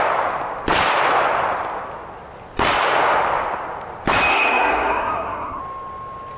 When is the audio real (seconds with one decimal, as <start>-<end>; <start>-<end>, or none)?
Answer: 0.0-4.3; 5.6-6.4

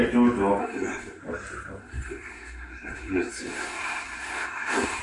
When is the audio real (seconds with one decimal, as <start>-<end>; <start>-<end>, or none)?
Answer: 0.0-0.6; 1.2-1.8

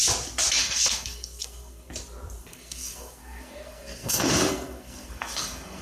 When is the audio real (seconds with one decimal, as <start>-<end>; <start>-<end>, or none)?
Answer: 0.0-0.6; 1.9-2.4

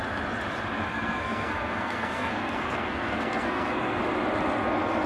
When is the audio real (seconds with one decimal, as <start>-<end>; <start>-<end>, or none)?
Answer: 0.0-0.9; 4.0-5.1